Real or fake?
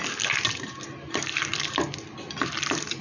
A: real